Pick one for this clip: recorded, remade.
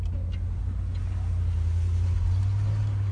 recorded